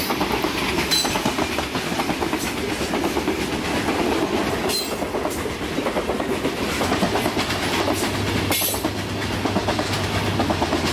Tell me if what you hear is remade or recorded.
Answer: recorded